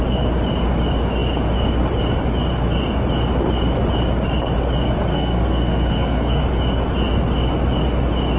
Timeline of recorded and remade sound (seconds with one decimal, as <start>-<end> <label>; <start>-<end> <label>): 0.0-5.1 recorded; 5.1-6.4 remade; 6.4-8.4 recorded